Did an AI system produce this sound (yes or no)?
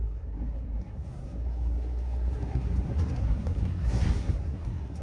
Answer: yes